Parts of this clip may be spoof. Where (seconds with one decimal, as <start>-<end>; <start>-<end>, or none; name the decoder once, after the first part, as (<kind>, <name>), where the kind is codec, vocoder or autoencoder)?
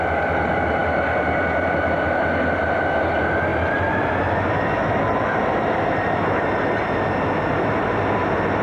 none